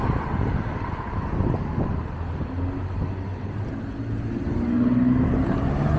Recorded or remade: recorded